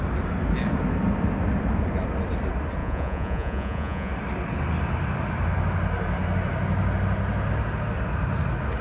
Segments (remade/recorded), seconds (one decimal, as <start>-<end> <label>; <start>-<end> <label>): 0.0-2.8 recorded; 2.8-4.1 remade; 4.1-8.8 recorded